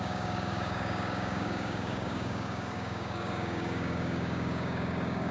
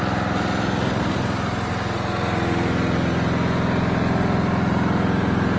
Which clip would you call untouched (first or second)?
second